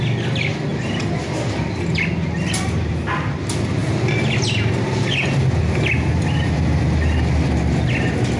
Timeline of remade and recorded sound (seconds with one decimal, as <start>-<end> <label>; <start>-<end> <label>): 0.0-8.4 recorded